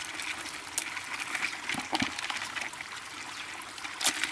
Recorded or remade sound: recorded